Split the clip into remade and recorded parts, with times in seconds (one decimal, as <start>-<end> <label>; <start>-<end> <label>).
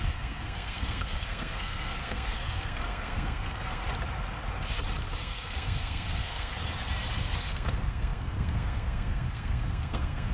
0.0-3.8 remade; 3.8-5.2 recorded; 5.2-6.5 remade; 6.5-7.2 recorded; 7.2-10.3 remade